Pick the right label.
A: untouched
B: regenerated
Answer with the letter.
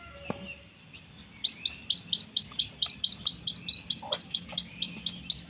A